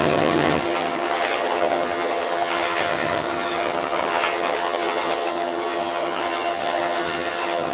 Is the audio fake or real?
fake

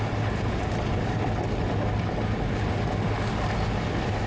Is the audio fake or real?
real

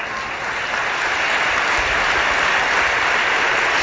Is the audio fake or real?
real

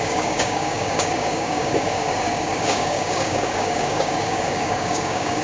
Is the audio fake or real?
fake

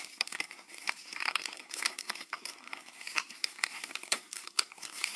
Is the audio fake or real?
fake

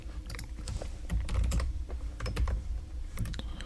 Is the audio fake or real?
fake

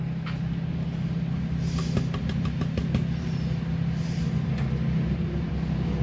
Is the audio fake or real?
real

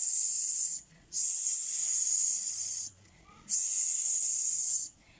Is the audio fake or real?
fake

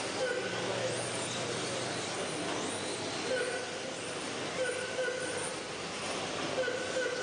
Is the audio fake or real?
real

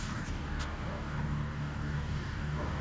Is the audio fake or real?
fake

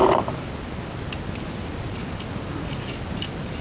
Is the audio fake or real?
real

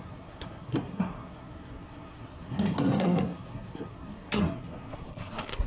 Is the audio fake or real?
fake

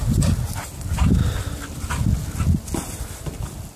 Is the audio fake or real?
real